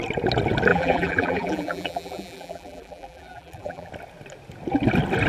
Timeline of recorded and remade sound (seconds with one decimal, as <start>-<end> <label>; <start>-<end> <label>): 0.0-0.7 recorded; 0.7-3.9 remade; 3.9-5.3 recorded